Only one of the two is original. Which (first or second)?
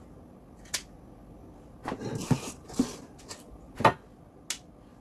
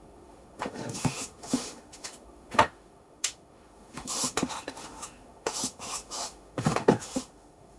first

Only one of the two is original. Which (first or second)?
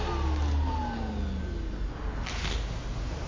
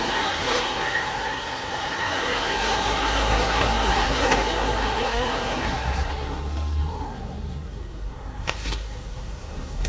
first